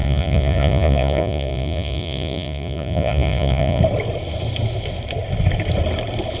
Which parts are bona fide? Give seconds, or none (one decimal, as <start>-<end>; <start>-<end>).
3.8-6.4